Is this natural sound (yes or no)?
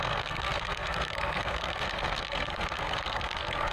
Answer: no